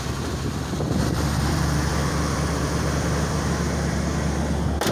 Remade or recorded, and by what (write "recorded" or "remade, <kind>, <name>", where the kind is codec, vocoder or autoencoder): remade, vocoder, BigVGAN v2